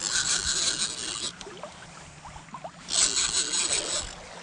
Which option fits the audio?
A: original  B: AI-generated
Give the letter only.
A